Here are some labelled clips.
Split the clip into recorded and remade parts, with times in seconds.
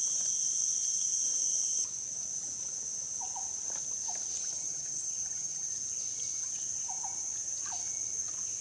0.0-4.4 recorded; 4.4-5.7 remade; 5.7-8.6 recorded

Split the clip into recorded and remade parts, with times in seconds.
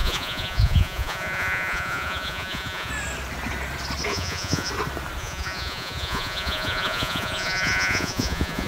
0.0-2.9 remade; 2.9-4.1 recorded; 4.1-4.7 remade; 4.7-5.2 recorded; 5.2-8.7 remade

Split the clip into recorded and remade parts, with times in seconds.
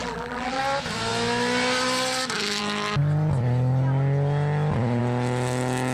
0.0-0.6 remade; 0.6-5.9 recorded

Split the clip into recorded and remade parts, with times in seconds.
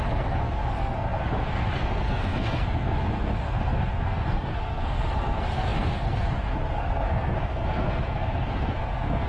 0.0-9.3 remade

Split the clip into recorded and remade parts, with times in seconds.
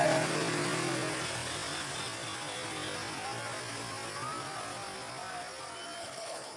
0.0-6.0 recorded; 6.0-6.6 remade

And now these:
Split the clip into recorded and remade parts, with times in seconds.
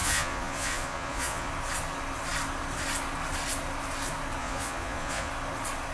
0.0-1.5 remade; 1.5-4.4 recorded; 4.4-5.3 remade; 5.3-5.9 recorded